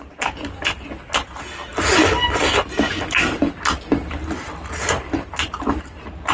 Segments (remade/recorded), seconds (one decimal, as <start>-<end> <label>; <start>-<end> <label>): 0.0-6.3 recorded